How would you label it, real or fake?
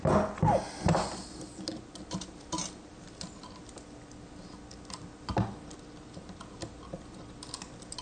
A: real